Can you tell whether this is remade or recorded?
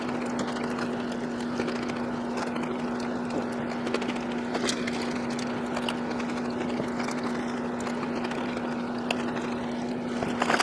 recorded